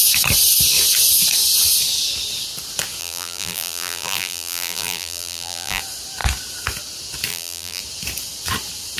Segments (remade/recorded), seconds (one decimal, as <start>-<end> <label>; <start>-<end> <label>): 0.0-3.0 recorded; 3.0-5.8 remade; 5.8-7.3 recorded; 7.3-7.8 remade; 7.8-9.0 recorded